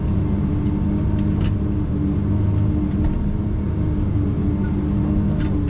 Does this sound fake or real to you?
real